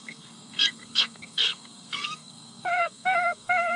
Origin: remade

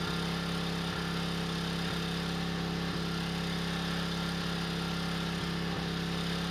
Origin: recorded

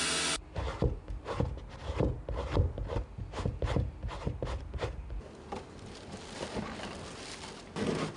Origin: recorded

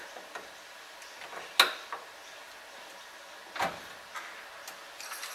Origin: recorded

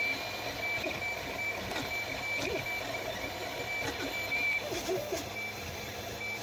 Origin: recorded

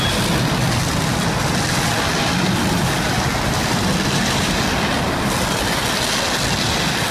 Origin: recorded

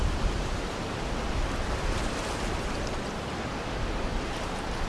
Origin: recorded